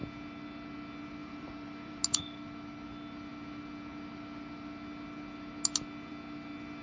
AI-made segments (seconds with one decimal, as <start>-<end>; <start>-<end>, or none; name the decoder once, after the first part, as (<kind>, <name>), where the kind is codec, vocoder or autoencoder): 1.2-2.0 (vocoder, BigVGAN v2)